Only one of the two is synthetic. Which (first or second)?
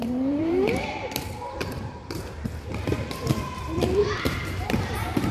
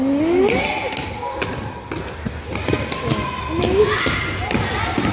first